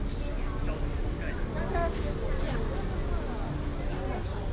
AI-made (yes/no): no